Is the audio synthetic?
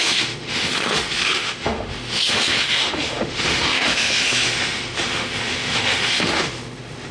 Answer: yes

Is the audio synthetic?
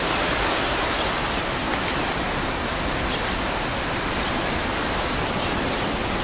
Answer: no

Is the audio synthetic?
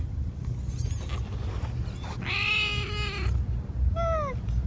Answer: no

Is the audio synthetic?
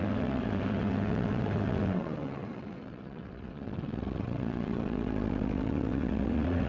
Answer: yes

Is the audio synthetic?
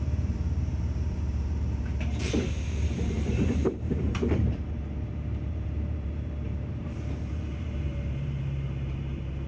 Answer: yes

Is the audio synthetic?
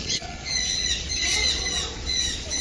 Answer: yes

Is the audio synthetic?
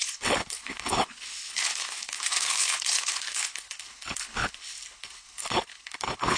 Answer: yes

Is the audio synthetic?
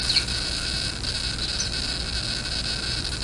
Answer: no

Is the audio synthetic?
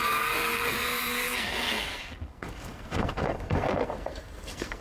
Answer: yes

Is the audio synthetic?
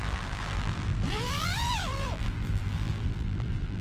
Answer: yes